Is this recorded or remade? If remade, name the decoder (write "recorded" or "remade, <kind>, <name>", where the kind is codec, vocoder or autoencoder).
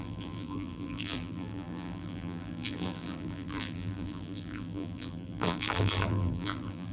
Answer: remade, vocoder, BigVGAN v2